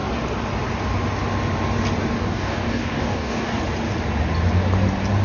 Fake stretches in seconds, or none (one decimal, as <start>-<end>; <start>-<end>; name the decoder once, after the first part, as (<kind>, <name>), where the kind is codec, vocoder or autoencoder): 2.2-3.6 (codec, DAC)